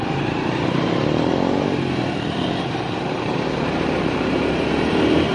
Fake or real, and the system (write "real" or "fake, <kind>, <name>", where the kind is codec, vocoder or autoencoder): fake, vocoder, BigVGAN v2